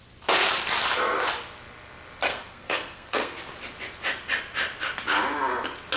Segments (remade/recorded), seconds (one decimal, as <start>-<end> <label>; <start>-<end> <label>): 0.0-2.3 recorded; 2.3-3.5 remade; 3.5-6.0 recorded